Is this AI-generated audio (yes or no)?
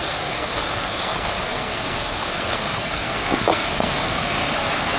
yes